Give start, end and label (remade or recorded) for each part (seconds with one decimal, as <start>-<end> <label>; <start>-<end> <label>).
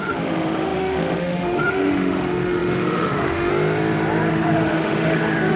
0.0-3.5 remade; 3.5-4.3 recorded; 4.3-5.6 remade